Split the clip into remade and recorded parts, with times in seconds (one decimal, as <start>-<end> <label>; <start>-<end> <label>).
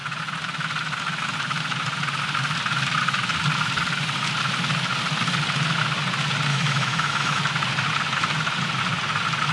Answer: 0.0-6.5 recorded; 6.5-7.4 remade; 7.4-9.5 recorded